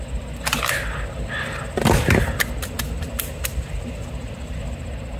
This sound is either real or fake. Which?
real